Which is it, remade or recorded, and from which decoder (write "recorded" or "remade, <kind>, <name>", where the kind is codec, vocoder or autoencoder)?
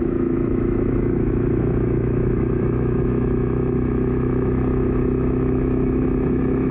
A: remade, autoencoder, DAC-VAE